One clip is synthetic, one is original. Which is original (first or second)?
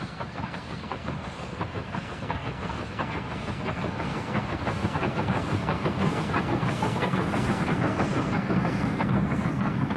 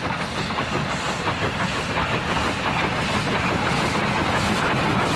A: second